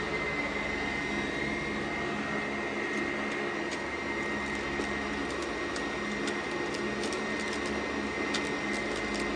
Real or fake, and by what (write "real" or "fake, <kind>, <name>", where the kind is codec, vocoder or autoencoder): real